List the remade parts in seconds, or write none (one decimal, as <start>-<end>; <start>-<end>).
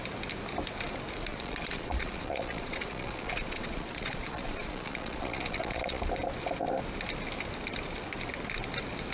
1.3-6.0